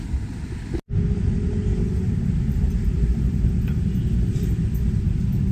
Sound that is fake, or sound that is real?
real